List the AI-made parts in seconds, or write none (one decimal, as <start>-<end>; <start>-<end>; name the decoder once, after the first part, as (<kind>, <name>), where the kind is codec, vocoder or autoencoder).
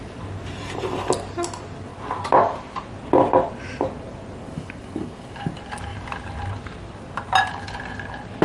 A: 4.4-5.4 (codec, DAC)